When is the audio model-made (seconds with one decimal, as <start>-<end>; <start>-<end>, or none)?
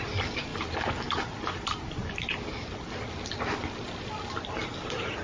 none